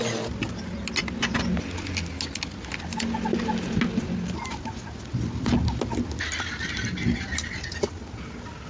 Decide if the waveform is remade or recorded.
recorded